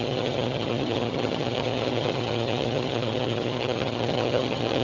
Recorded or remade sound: remade